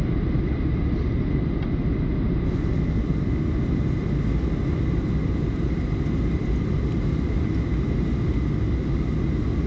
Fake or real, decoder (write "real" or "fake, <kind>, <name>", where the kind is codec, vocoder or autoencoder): real